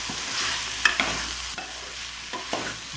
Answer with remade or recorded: recorded